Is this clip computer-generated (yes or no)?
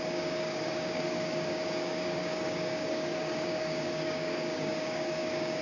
yes